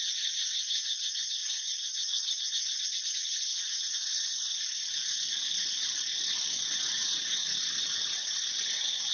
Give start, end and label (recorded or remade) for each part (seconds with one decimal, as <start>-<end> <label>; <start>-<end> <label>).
0.0-1.4 recorded; 1.4-4.6 remade; 4.6-7.0 recorded; 7.0-8.4 remade; 8.4-9.1 recorded